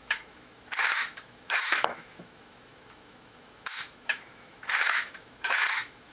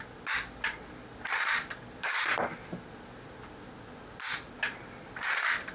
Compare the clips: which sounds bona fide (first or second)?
second